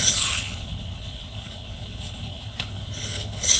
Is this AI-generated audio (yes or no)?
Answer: yes